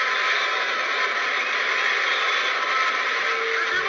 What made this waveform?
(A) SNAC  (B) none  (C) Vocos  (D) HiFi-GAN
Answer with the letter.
B